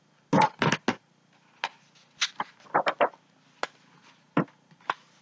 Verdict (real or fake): real